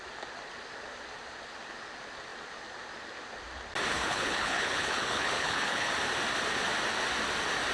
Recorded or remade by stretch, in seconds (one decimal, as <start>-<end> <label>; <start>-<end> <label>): 0.0-3.9 recorded; 3.9-5.9 remade; 5.9-7.7 recorded